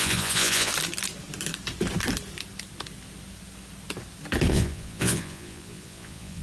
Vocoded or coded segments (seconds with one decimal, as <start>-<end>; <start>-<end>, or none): 0.0-0.7; 4.5-6.4